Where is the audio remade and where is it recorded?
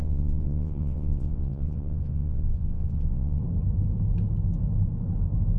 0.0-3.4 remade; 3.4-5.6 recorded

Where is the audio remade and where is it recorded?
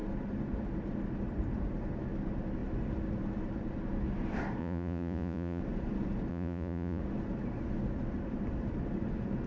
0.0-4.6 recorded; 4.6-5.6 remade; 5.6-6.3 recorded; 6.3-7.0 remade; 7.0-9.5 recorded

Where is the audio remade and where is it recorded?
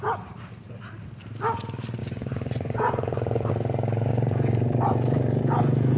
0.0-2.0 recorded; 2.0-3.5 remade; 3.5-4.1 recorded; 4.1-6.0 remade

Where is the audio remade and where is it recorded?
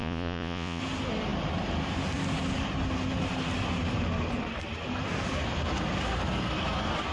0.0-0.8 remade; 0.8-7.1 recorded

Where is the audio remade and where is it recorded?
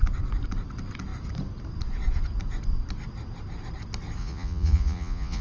0.0-4.2 recorded; 4.2-5.4 remade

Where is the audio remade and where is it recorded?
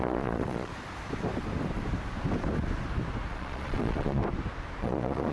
0.0-0.7 remade; 0.7-3.3 recorded; 3.3-4.2 remade; 4.2-4.8 recorded; 4.8-5.3 remade